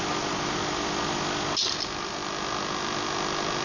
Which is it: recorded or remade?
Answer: recorded